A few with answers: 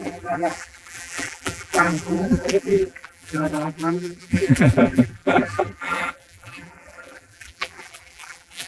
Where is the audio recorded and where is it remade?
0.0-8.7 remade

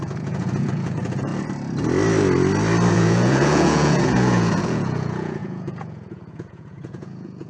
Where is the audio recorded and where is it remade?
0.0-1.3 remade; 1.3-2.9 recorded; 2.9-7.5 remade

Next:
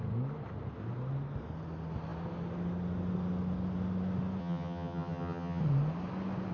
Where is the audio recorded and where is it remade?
0.0-4.4 recorded; 4.4-5.6 remade; 5.6-6.5 recorded